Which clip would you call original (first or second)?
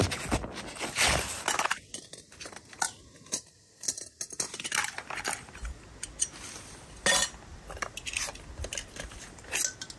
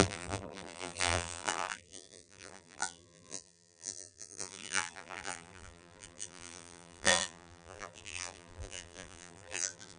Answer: first